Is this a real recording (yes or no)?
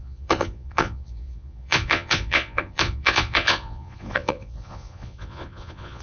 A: no